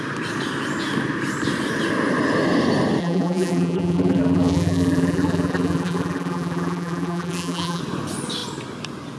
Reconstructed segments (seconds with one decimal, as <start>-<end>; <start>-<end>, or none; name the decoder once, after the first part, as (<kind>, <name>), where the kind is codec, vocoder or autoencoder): 3.0-7.8 (vocoder, BigVGAN v2)